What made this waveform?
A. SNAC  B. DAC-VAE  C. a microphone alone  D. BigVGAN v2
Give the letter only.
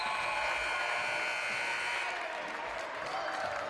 C